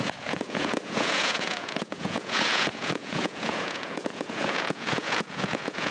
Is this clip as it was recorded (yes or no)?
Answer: no